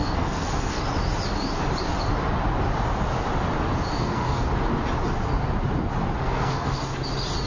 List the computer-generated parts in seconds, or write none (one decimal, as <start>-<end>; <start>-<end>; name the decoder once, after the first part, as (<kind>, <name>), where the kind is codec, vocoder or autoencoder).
0.0-0.8 (codec, SNAC); 3.9-4.5; 6.2-6.8